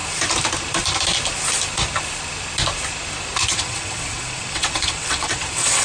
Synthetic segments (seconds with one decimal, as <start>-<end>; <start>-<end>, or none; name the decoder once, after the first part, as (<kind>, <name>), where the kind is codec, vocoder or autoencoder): 3.5-5.8 (vocoder, WaveNeXt)